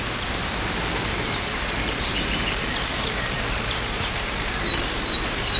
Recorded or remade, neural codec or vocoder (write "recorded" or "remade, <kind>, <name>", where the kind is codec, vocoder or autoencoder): remade, vocoder, BigVGAN v2